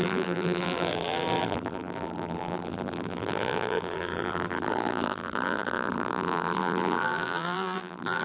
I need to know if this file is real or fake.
fake